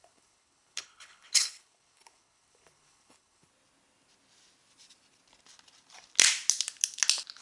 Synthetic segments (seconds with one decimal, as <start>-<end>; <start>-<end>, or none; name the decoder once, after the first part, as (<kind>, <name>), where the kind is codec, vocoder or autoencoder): 0.0-3.5 (codec, HILCodec)